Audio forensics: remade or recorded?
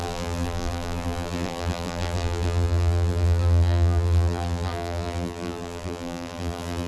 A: remade